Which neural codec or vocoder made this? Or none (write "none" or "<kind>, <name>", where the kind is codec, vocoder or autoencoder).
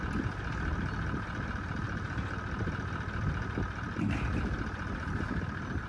none